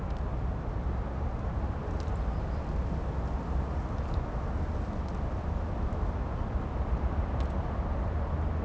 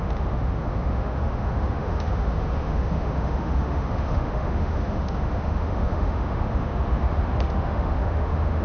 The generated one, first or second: second